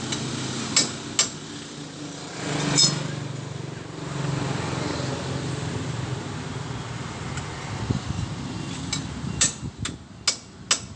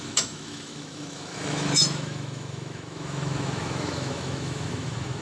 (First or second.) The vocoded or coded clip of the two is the second